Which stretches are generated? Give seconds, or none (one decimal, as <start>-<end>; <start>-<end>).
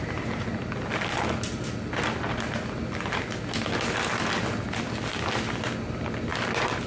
none